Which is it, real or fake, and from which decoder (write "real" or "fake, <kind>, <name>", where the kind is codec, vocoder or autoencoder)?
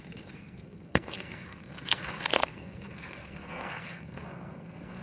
fake, codec, SNAC